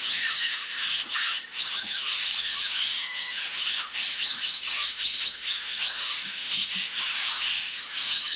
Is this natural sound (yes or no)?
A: no